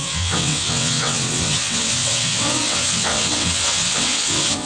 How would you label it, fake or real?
fake